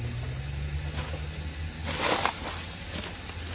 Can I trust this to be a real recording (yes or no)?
yes